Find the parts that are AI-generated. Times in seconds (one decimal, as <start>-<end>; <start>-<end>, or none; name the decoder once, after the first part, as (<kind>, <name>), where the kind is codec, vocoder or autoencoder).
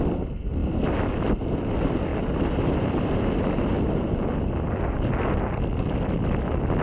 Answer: none